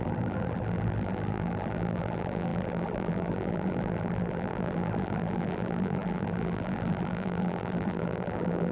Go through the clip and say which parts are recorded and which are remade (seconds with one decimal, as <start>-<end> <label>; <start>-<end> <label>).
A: 0.0-8.7 remade